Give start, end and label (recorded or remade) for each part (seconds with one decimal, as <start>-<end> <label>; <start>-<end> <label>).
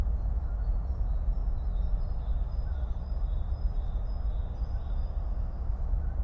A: 0.0-6.2 recorded